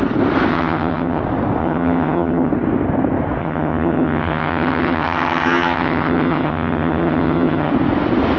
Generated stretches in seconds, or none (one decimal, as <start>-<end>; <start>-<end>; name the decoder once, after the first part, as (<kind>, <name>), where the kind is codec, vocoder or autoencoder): 0.5-1.2 (vocoder, HiFi-GAN); 1.6-2.5; 3.4-7.7